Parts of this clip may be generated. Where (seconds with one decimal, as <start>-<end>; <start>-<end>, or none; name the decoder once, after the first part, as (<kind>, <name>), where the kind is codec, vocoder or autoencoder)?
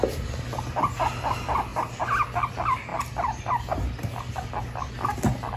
none